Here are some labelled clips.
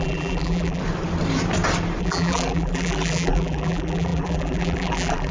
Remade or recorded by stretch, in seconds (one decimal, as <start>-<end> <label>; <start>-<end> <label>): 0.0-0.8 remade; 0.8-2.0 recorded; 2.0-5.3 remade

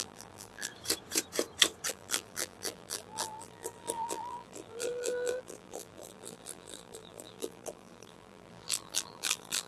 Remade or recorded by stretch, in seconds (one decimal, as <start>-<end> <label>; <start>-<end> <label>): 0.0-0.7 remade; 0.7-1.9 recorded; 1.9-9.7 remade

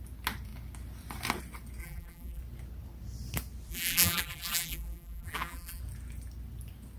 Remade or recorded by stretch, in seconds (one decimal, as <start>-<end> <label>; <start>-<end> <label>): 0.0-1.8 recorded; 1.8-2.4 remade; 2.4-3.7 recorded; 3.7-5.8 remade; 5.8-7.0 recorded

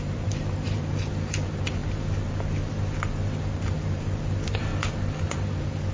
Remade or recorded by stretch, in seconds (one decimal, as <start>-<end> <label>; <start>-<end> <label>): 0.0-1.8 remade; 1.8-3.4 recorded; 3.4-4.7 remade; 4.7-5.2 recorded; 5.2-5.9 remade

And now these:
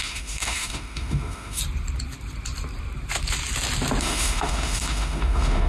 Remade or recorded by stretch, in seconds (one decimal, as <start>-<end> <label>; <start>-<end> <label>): 0.0-1.6 remade; 1.6-4.0 recorded; 4.0-5.7 remade

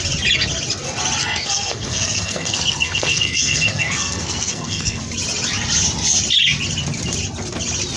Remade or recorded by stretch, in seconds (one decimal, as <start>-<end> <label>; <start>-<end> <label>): 0.0-1.2 recorded; 1.2-5.0 remade; 5.0-8.0 recorded